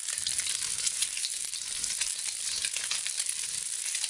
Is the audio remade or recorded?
recorded